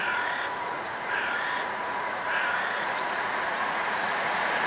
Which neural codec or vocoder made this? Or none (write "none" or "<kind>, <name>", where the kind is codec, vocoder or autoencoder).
vocoder, Vocos